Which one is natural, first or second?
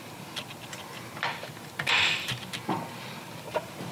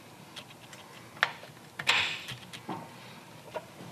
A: second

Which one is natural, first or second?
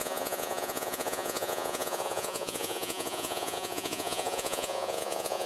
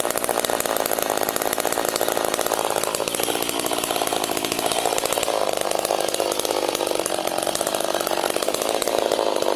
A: second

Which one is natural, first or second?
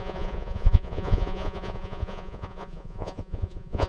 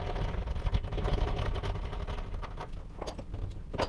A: second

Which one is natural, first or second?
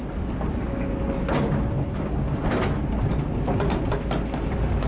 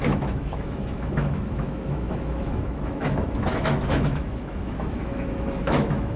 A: first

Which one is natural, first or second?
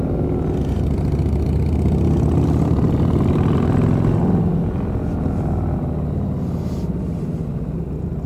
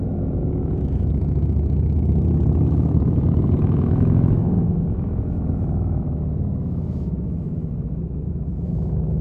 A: first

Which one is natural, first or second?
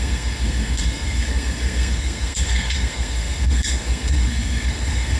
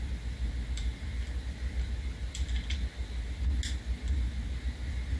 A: second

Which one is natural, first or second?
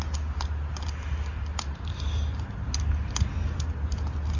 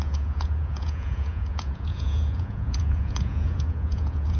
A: first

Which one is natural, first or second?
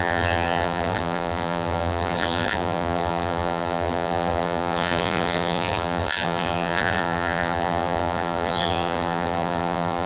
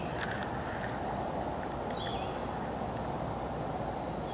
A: second